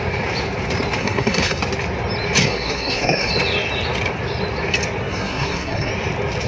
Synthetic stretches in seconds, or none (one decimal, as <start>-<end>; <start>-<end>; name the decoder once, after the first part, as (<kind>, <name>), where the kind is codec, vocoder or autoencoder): 1.0-1.6 (codec, SNAC); 2.4-3.3; 5.1-5.9